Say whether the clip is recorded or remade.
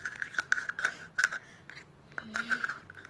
remade